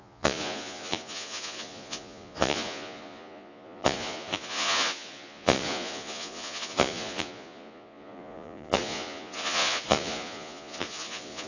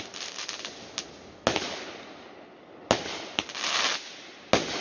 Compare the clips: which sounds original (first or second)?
second